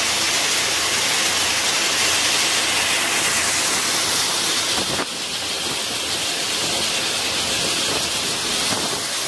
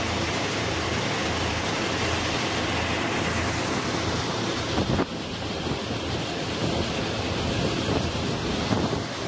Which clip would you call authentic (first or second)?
first